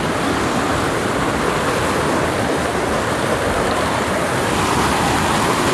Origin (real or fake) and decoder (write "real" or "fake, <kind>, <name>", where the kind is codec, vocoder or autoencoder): real